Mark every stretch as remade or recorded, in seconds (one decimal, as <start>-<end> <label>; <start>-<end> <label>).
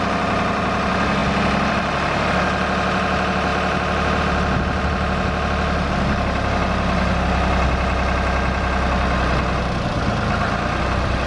0.0-11.3 recorded